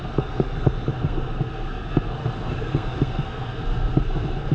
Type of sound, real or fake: fake